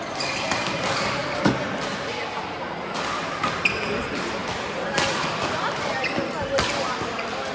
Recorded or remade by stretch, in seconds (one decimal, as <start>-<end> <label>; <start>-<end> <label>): 0.0-1.2 remade; 1.2-2.3 recorded; 2.3-7.5 remade

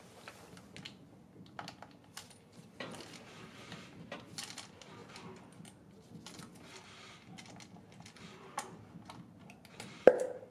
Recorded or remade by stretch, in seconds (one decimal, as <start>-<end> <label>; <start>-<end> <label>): 0.0-10.5 recorded

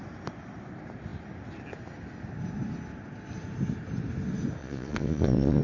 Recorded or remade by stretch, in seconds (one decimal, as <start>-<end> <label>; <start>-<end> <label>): 0.0-4.6 recorded; 4.6-5.6 remade

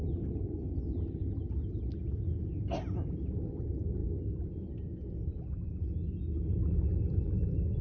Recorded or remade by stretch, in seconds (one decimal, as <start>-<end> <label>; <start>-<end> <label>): 0.0-7.8 recorded

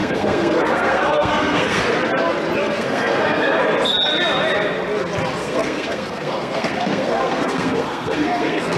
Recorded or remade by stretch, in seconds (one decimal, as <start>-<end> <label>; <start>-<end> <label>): 0.0-1.8 remade; 1.8-2.6 recorded; 2.6-3.6 remade; 3.6-5.4 recorded; 5.4-8.8 remade